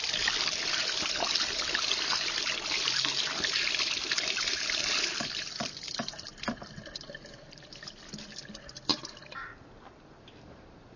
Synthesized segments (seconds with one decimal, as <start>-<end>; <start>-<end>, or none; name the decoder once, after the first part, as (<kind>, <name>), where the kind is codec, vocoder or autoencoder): none